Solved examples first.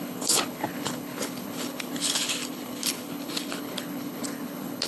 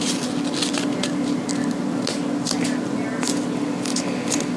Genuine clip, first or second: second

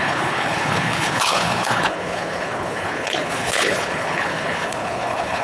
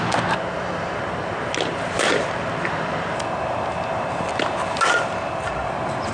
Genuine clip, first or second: second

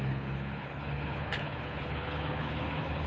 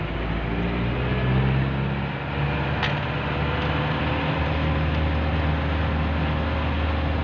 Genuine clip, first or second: second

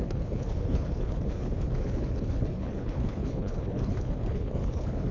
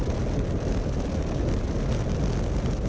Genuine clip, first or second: second